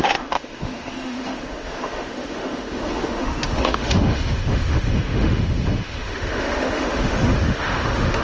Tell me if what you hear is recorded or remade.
remade